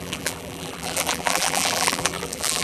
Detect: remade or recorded remade